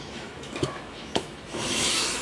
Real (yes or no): no